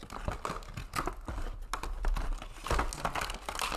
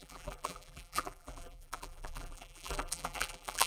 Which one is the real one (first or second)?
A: first